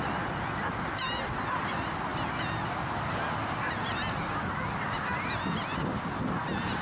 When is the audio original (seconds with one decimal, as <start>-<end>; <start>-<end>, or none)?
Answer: 0.0-6.8